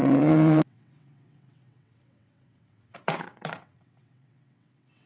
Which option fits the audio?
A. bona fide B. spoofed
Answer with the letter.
B